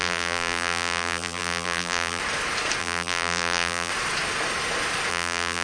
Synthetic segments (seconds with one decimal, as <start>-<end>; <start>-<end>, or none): 0.0-2.2; 2.8-3.9; 5.1-5.6